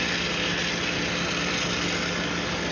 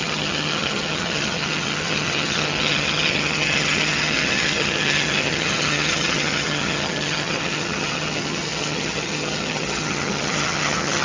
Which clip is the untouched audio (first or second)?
first